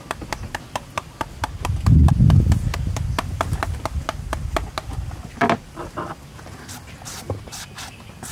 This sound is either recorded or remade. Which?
recorded